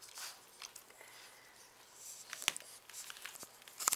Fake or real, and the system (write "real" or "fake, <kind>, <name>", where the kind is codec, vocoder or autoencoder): real